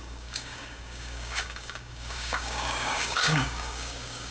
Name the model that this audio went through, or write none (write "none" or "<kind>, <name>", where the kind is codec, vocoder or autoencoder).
codec, DAC